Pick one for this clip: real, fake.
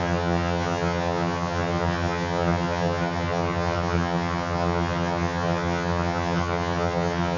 fake